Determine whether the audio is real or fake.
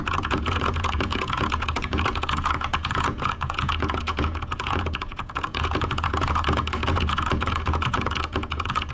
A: fake